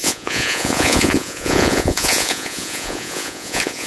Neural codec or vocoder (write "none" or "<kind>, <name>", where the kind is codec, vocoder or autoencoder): vocoder, Vocos